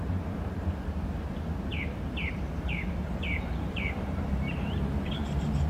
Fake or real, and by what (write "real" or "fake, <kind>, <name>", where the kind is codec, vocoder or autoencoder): fake, vocoder, BigVGAN v2